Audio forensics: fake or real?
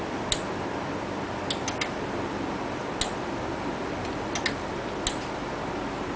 real